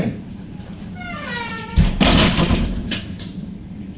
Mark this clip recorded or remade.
remade